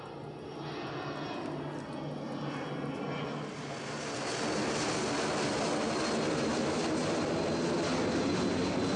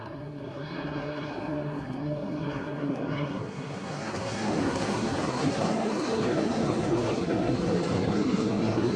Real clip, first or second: first